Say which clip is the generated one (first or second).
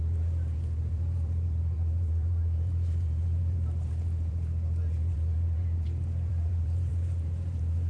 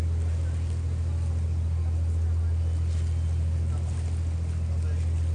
first